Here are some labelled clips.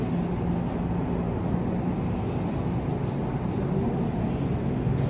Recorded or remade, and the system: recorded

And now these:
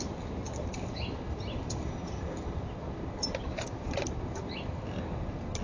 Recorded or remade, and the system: recorded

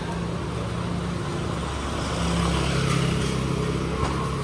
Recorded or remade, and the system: recorded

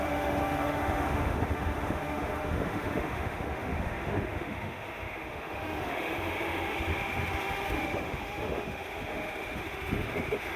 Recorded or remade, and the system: remade, autoencoder, DAC-VAE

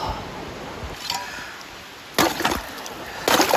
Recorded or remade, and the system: recorded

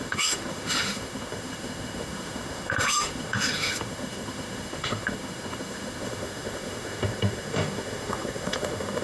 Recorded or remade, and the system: remade, autoencoder, DAC-VAE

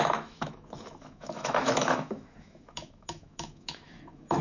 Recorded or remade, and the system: remade, autoencoder, DAC-VAE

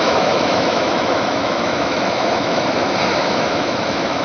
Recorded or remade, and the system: remade, autoencoder, DAC-VAE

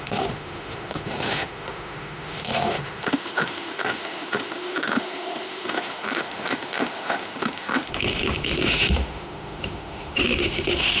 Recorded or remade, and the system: remade, autoencoder, DAC-VAE